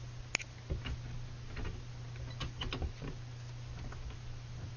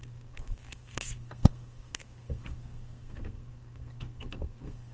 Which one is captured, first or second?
first